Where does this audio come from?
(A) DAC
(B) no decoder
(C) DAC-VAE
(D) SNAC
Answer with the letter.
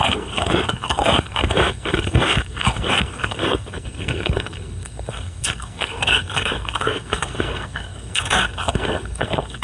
D